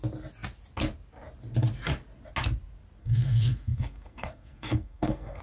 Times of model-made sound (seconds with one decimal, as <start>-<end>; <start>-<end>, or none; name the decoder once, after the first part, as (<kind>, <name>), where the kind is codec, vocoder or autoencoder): 3.0-5.4 (codec, SNAC)